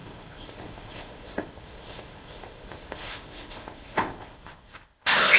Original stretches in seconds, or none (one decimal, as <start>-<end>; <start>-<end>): none